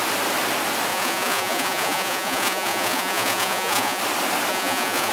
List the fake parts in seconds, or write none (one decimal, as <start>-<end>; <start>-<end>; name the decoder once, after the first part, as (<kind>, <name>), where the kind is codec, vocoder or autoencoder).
0.9-4.0 (vocoder, Vocos); 4.5-5.1